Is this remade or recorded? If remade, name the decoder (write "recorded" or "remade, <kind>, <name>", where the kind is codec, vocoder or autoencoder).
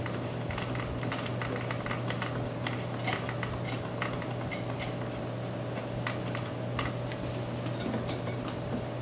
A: recorded